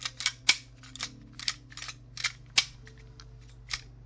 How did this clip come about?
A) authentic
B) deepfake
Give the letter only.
A